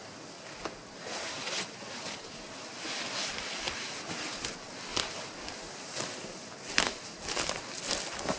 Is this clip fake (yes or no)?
no